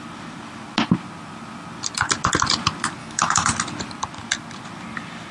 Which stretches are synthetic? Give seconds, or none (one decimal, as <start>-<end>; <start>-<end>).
3.0-3.5